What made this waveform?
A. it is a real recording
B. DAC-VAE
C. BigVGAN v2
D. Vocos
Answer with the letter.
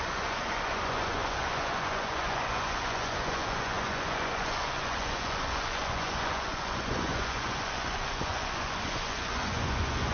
D